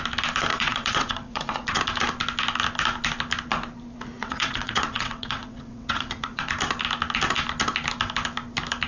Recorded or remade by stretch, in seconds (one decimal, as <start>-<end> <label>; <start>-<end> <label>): 0.0-0.5 recorded; 0.5-1.8 remade; 1.8-4.2 recorded; 4.2-6.5 remade; 6.5-8.9 recorded